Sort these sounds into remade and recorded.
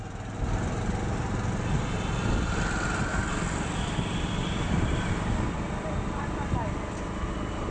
recorded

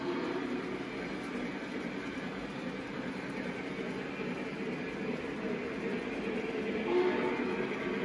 recorded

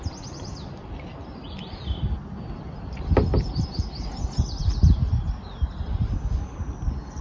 recorded